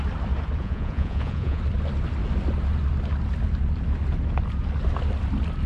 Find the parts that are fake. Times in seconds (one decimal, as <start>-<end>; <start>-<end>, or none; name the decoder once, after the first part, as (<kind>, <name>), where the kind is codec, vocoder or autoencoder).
0.6-1.6 (vocoder, Vocos)